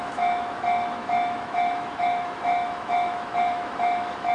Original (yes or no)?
no